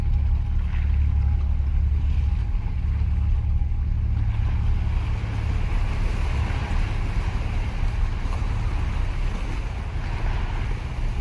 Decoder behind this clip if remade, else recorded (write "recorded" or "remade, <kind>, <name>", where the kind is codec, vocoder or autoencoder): recorded